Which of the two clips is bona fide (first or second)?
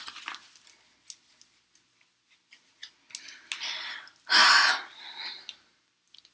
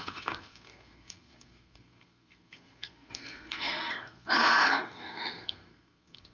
first